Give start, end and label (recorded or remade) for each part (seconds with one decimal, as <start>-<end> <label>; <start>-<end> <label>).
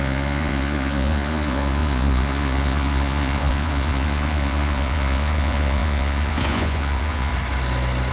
0.0-7.3 remade; 7.3-8.1 recorded